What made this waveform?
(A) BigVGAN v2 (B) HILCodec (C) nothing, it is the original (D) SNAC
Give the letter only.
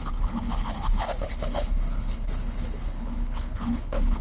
B